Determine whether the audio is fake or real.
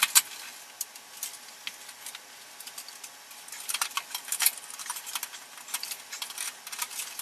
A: real